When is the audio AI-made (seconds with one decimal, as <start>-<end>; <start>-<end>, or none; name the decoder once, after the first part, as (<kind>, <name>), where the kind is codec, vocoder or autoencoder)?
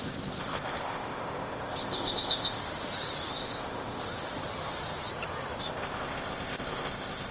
0.0-2.6 (codec, ZipCodec); 3.3-4.0; 5.6-7.3